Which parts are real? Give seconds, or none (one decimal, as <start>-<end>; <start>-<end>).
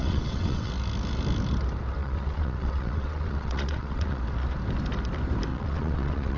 0.7-2.0; 4.2-5.5